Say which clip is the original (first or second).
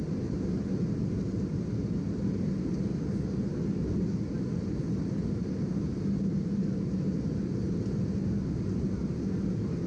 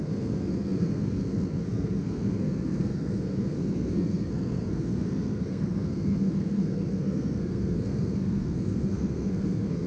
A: first